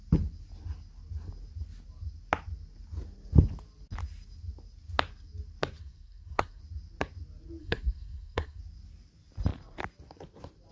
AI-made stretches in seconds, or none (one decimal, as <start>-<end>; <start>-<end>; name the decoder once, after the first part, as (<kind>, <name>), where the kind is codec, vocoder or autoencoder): 5.8-6.6 (codec, SNAC); 7.6-8.6